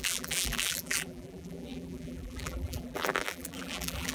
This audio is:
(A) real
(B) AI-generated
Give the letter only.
B